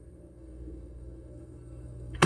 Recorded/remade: remade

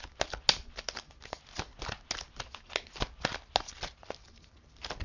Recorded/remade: recorded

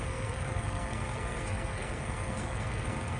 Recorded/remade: remade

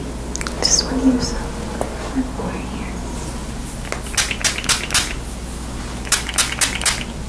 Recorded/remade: recorded